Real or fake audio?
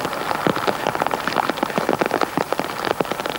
real